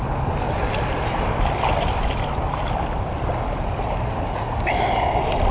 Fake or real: real